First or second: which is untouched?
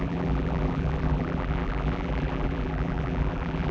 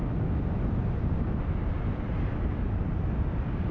second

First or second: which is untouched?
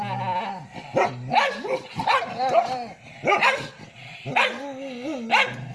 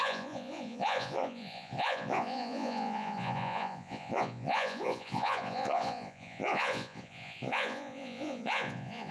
first